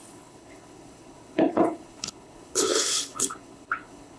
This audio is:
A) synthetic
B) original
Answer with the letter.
A